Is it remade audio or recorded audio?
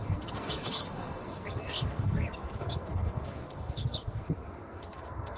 remade